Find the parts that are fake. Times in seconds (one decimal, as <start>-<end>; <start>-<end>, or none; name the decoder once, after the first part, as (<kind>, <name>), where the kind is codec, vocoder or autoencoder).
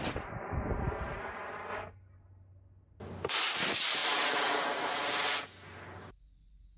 none